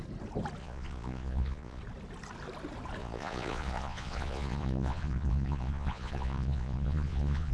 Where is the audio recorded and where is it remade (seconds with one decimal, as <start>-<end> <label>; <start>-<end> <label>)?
0.0-0.6 recorded; 0.6-1.8 remade; 1.8-3.0 recorded; 3.0-7.5 remade

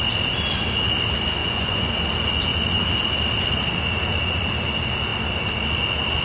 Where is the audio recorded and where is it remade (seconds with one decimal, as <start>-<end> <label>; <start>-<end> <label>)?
0.0-1.4 recorded; 1.4-1.9 remade; 1.9-6.2 recorded

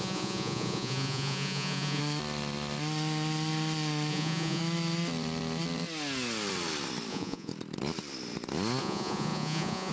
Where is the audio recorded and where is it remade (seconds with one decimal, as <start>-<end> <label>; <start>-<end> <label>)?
0.0-2.0 remade; 2.0-4.1 recorded; 4.1-4.6 remade; 4.6-7.1 recorded; 7.1-7.5 remade; 7.5-8.8 recorded; 8.8-9.9 remade

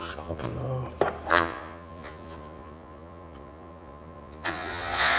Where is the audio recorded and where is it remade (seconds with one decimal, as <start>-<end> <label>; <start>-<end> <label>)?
0.0-0.5 remade; 0.5-1.3 recorded; 1.3-5.2 remade

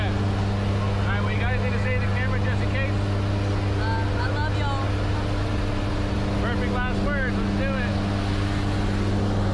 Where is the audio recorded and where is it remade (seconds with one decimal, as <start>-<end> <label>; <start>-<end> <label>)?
0.0-9.5 recorded

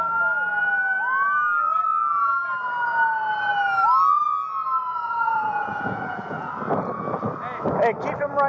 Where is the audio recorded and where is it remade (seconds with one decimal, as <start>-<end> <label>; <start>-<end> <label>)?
0.0-4.9 recorded; 4.9-6.5 remade; 6.5-8.5 recorded

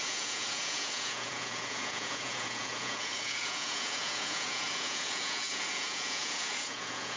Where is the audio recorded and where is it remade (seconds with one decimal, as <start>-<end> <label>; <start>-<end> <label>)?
0.0-7.2 remade

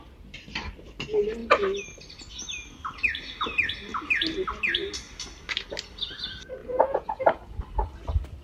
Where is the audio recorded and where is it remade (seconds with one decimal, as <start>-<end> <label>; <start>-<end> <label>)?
0.0-6.6 recorded; 6.6-7.6 remade; 7.6-8.4 recorded